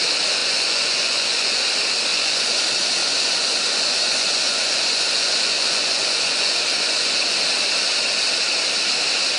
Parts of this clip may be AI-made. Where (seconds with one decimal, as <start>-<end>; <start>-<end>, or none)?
0.4-1.7; 2.1-2.6; 3.0-7.4